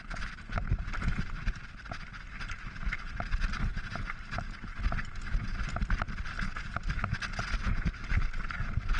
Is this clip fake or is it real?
real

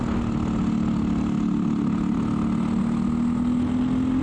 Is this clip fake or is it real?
real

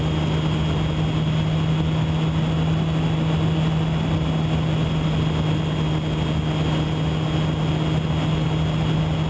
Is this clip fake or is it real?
real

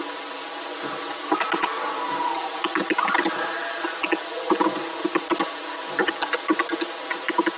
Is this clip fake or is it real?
real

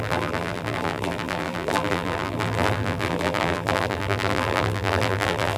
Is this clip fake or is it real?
fake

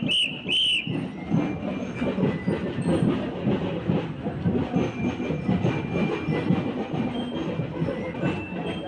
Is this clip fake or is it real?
real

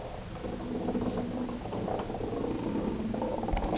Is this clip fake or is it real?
real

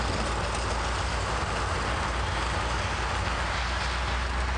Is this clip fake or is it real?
real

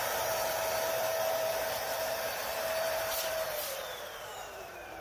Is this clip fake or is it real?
fake